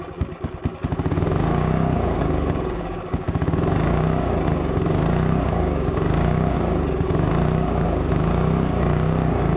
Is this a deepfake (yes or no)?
yes